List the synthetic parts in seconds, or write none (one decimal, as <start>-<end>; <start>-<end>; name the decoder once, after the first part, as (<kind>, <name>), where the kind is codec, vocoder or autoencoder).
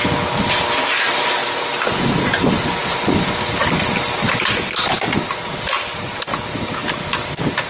none